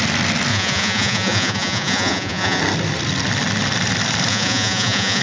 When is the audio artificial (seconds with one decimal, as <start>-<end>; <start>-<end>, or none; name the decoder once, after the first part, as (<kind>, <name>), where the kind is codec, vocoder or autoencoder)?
0.5-2.6 (vocoder, Vocos); 4.3-5.2